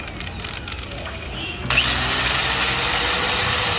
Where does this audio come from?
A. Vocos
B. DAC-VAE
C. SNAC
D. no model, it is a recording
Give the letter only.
D